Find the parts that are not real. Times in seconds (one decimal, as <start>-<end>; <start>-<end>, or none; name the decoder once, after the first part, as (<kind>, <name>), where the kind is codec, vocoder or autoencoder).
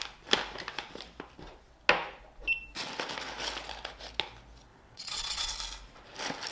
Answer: 4.7-5.5 (vocoder, WaveNeXt)